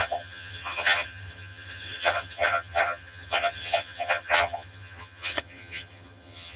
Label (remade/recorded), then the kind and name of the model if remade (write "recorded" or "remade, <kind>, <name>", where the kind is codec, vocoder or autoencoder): remade, vocoder, HiFi-GAN